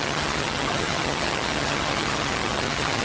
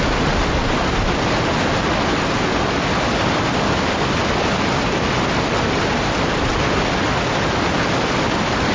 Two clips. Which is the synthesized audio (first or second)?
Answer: first